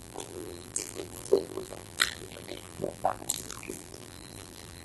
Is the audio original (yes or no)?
no